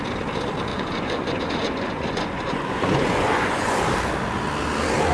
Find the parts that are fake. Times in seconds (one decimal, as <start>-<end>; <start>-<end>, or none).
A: 0.7-3.8